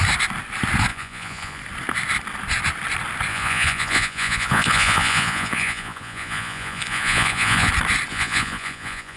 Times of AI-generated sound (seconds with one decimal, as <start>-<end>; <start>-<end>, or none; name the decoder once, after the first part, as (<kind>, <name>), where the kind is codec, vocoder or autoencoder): 0.9-1.6 (vocoder, Vocos); 3.3-7.7; 8.1-9.2